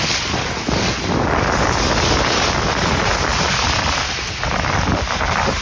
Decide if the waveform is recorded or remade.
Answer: recorded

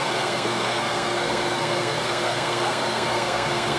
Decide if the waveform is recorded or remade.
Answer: remade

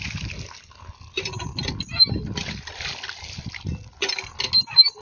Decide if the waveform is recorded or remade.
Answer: recorded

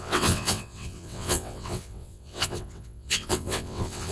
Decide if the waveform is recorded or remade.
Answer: remade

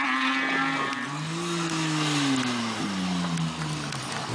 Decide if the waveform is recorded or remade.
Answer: recorded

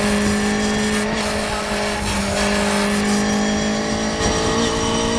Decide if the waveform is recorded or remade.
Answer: recorded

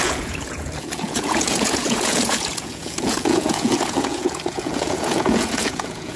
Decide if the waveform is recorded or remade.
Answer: remade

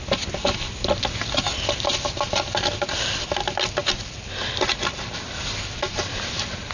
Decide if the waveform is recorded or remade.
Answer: recorded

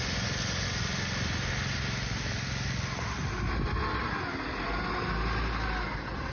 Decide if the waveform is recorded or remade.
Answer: recorded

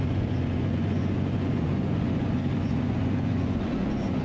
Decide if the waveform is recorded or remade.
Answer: remade